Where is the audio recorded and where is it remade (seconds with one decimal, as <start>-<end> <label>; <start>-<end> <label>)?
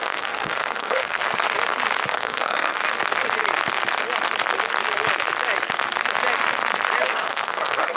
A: 0.0-1.2 remade; 1.2-2.1 recorded; 2.1-2.8 remade; 2.8-7.1 recorded; 7.1-8.0 remade